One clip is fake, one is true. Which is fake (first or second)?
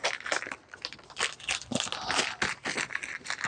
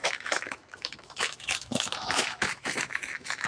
second